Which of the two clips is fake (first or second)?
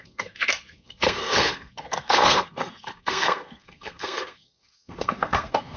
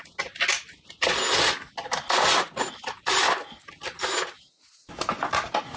first